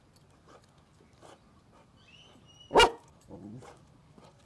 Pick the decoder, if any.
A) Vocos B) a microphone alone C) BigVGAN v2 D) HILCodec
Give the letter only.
B